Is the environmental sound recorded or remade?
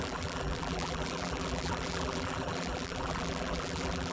remade